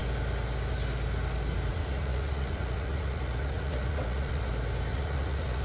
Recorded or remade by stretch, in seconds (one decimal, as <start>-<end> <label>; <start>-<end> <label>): 0.0-1.7 recorded; 1.7-4.5 remade; 4.5-4.9 recorded; 4.9-5.6 remade